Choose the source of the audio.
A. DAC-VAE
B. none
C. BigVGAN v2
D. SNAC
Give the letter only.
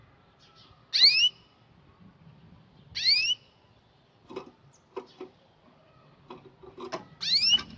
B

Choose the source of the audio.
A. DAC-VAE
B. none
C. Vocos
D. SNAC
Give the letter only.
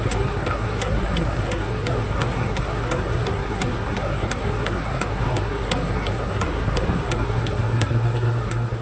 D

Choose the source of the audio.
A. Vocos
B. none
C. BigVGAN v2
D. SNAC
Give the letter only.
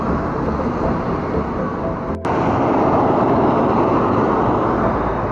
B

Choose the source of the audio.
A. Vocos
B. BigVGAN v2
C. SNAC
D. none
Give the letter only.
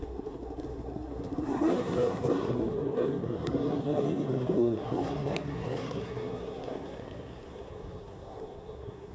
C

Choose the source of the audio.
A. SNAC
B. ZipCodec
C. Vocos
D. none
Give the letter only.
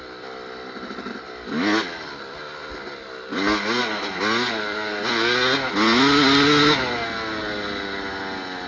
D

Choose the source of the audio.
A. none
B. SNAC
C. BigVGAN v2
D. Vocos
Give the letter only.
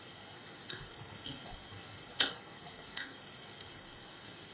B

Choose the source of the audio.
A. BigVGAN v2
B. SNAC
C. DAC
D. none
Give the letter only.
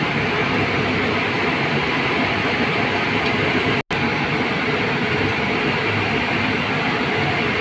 D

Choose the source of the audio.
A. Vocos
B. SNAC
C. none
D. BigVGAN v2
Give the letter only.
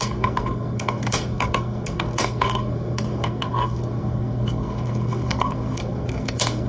B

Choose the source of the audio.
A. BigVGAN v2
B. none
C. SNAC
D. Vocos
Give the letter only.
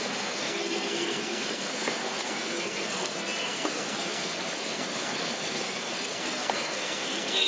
C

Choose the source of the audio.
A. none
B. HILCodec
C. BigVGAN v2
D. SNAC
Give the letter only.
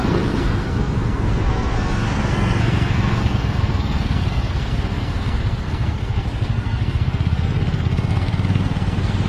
D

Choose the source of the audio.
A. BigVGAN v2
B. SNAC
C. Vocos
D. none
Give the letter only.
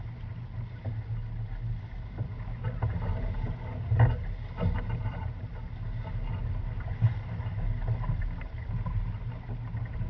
D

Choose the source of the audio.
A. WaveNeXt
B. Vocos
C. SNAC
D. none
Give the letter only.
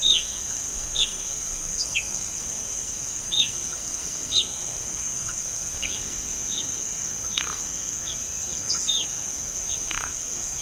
C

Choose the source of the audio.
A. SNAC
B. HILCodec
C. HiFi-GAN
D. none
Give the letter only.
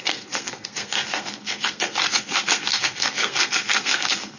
A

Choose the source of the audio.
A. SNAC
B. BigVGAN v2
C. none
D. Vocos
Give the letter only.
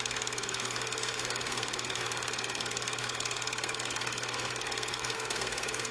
A